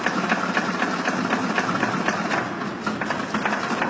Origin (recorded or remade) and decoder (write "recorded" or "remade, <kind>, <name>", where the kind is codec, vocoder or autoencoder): recorded